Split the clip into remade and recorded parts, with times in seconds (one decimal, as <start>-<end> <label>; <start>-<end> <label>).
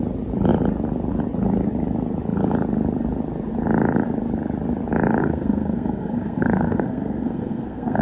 0.0-5.2 recorded; 5.2-8.0 remade